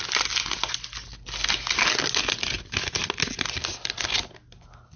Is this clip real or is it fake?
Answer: real